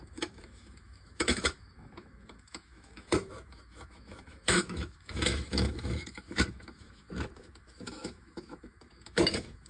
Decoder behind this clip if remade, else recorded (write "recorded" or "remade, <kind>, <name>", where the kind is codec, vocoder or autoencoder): remade, autoencoder, DAC-VAE